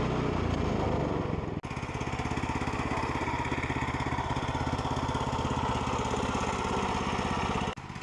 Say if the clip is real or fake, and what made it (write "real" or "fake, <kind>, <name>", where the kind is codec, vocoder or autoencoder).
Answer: real